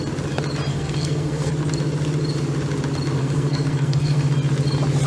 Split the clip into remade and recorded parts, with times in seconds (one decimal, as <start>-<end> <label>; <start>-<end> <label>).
0.0-0.7 recorded; 0.7-1.5 remade; 1.5-3.2 recorded; 3.2-4.3 remade; 4.3-5.1 recorded